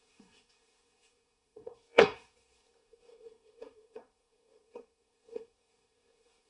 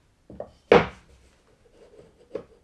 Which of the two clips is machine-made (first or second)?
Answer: first